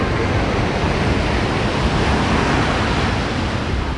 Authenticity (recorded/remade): recorded